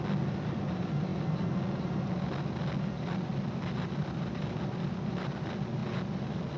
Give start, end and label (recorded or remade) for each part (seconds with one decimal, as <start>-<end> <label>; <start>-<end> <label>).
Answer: 0.0-6.6 recorded